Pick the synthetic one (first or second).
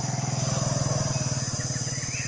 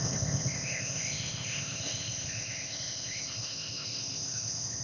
second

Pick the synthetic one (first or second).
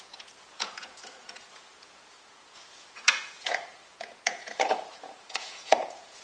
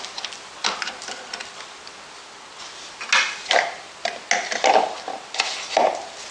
first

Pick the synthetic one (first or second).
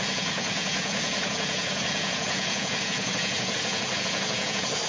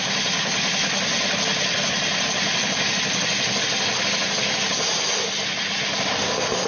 first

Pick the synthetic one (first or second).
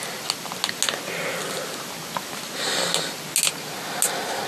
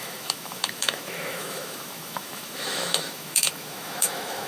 second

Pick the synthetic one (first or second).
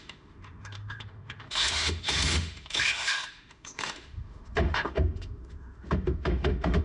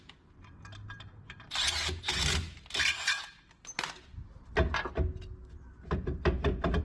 first